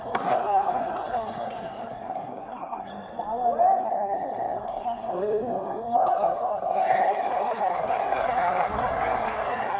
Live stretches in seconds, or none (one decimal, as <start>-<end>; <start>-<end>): 2.9-3.8